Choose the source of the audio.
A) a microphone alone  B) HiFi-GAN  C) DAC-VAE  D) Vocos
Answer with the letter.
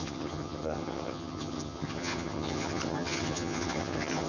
B